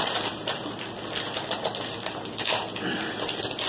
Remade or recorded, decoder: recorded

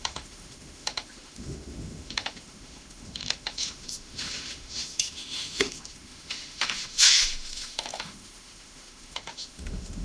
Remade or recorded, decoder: remade, autoencoder, DAC-VAE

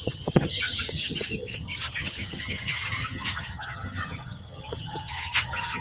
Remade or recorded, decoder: remade, vocoder, HiFi-GAN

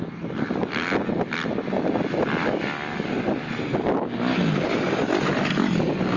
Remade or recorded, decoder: recorded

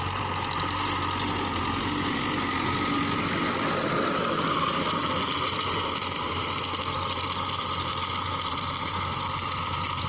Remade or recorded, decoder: recorded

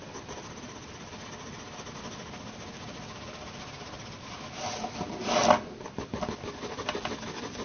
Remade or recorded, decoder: recorded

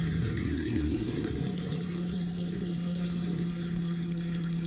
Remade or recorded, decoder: remade, codec, SNAC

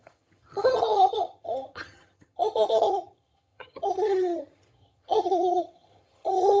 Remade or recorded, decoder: remade, vocoder, HiFi-GAN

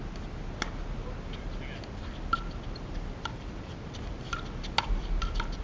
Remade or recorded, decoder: recorded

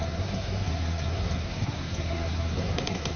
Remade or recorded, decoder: remade, codec, SNAC